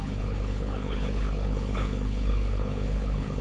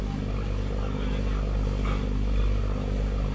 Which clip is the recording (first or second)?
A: second